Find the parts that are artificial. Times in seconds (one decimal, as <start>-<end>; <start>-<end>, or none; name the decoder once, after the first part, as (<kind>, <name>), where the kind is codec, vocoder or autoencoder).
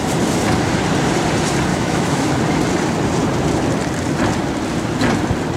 1.7-2.3 (autoencoder, DAC-VAE)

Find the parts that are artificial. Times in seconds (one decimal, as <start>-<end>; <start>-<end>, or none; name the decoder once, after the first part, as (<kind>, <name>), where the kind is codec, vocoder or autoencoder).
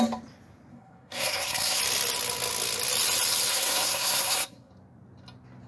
0.7-1.8 (codec, SNAC); 3.5-4.7